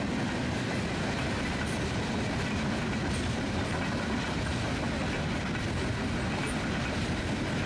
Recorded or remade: recorded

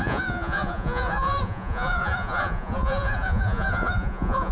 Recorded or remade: remade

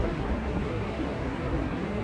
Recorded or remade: remade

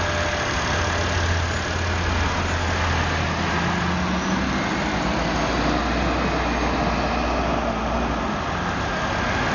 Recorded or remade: recorded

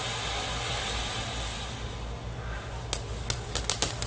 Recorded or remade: recorded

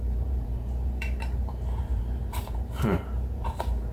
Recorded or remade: remade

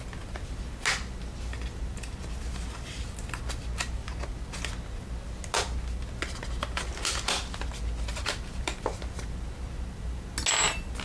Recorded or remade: recorded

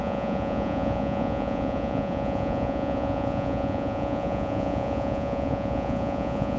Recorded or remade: remade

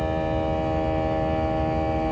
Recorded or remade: recorded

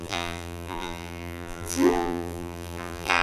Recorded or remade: remade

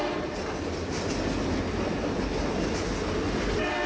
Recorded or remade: recorded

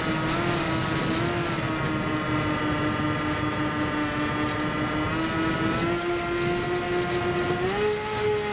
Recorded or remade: recorded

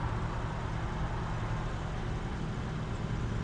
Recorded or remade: recorded